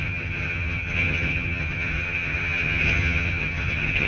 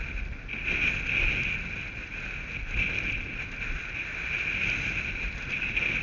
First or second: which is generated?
first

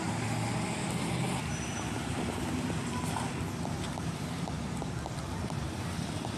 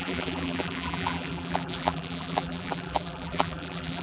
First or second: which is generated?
second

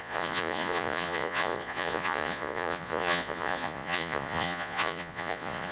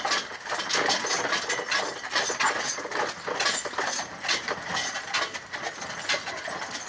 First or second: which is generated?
first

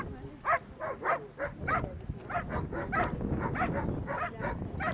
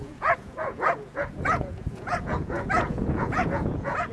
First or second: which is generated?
second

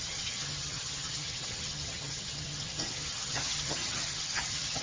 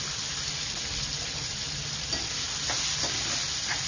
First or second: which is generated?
first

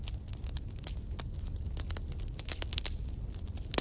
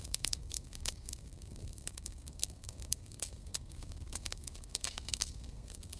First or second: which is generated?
second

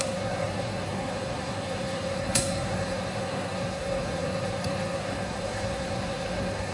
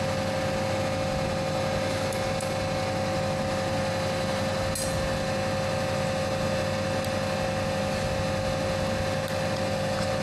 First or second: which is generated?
first